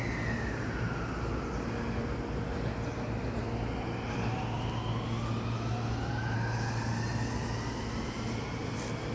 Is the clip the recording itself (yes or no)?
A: yes